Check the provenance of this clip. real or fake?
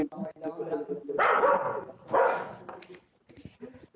real